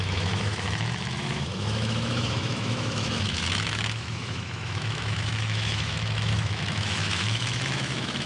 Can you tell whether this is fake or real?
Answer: fake